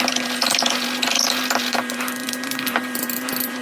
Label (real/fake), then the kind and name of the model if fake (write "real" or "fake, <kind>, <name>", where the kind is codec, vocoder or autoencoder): fake, vocoder, BigVGAN v2